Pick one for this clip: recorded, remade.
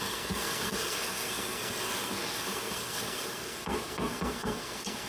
remade